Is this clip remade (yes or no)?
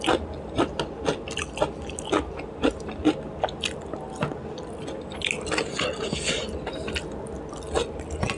no